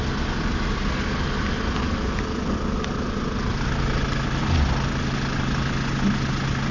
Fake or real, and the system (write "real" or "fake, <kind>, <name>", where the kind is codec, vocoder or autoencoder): real